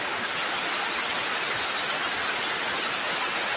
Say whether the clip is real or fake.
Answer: real